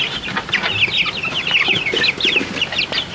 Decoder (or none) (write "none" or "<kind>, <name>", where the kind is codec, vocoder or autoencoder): none